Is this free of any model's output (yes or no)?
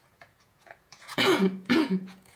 no